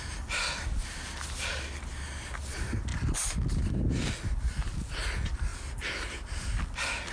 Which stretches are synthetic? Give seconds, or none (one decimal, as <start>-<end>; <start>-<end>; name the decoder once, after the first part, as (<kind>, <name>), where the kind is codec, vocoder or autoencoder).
none